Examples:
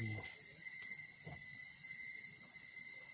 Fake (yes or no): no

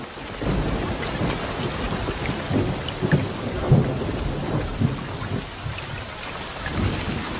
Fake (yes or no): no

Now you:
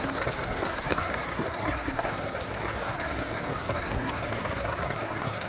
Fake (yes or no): yes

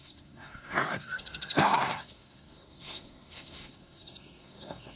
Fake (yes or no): yes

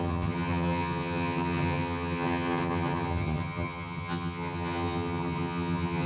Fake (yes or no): yes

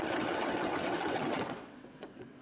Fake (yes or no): yes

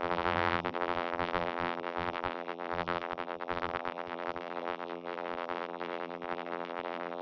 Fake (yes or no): yes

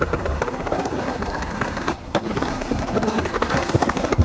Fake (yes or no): yes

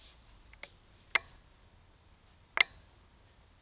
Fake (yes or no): no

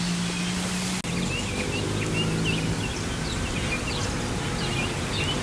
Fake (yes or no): no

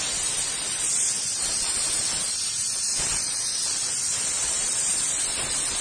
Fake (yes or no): no